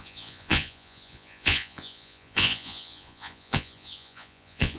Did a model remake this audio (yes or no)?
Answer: yes